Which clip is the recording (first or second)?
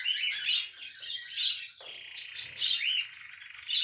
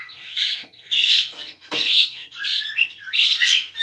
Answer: first